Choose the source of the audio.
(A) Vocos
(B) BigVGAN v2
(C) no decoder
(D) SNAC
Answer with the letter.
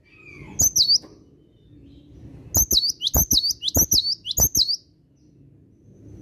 C